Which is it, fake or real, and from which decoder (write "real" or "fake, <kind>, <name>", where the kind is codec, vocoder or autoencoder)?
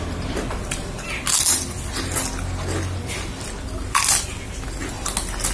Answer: real